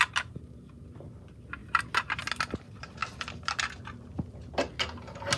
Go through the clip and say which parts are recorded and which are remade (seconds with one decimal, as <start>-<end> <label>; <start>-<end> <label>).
0.0-5.4 recorded

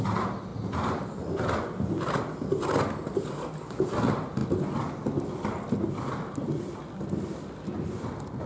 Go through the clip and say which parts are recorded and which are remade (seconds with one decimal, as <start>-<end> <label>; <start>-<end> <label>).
0.0-8.5 recorded

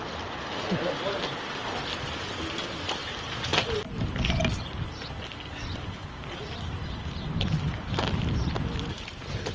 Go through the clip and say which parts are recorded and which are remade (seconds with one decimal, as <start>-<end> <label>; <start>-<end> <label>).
0.0-9.5 recorded

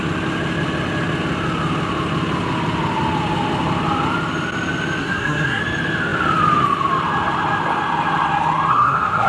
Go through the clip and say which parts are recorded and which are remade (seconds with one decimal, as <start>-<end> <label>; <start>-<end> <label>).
0.0-5.0 recorded; 5.0-5.6 remade; 5.6-8.7 recorded; 8.7-9.3 remade

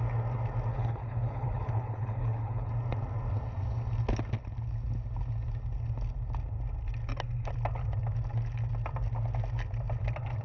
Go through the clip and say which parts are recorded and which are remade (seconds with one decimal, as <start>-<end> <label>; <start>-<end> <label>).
0.0-0.7 recorded; 0.7-2.7 remade; 2.7-10.4 recorded

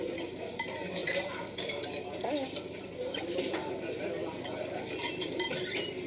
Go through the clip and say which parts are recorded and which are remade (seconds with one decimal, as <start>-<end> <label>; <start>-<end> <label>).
0.0-1.0 recorded; 1.0-1.7 remade; 1.7-6.1 recorded

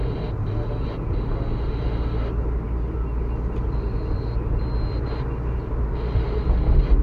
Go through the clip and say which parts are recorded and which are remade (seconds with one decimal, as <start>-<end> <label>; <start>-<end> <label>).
0.0-7.0 recorded